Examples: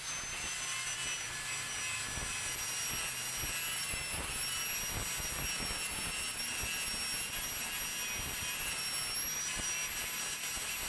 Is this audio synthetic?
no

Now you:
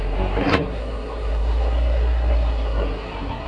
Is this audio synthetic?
yes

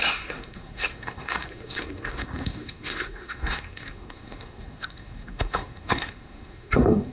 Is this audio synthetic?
yes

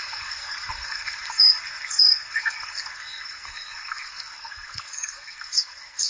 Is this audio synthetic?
yes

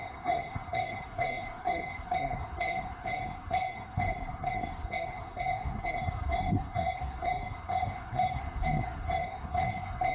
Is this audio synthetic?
yes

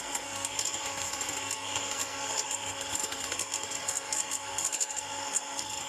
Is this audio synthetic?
yes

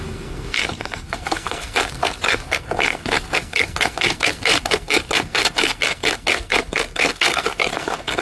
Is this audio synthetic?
yes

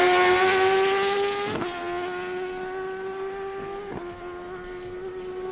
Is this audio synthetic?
no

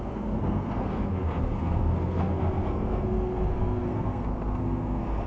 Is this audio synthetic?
yes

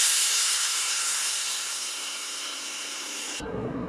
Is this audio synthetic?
yes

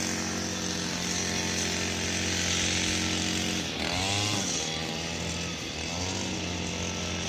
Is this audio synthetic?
no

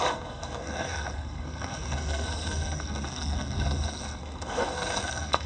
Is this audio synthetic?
yes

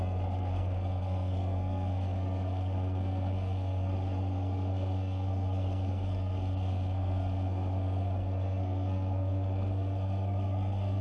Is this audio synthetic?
yes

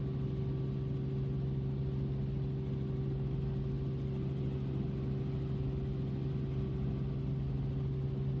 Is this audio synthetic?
no